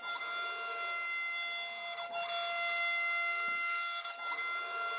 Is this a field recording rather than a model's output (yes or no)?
yes